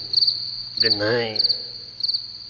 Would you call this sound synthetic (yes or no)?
no